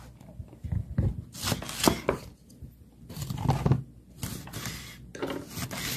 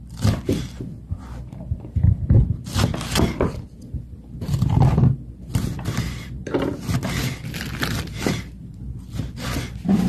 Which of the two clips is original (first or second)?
first